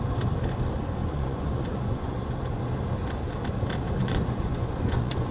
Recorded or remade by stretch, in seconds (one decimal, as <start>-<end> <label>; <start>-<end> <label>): 0.0-1.0 recorded; 1.0-2.3 remade; 2.3-4.0 recorded; 4.0-5.3 remade